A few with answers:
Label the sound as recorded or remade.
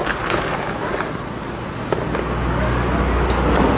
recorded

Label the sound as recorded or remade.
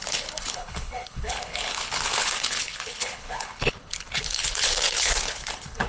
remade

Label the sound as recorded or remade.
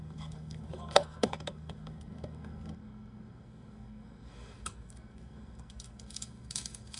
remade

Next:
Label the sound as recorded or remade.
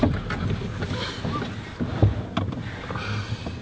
recorded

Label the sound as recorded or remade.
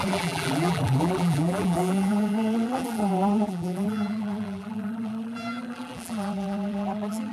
remade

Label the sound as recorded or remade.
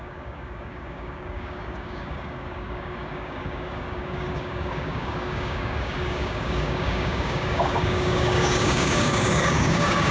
remade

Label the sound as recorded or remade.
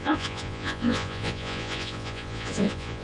remade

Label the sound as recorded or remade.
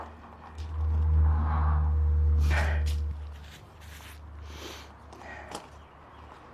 recorded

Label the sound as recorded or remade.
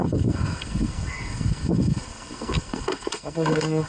remade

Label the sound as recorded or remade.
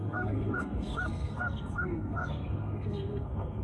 remade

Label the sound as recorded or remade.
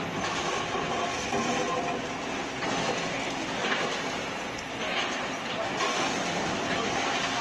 recorded